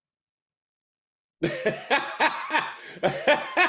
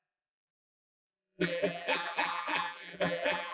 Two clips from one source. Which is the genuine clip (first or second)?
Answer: first